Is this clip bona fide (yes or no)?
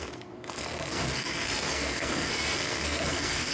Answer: no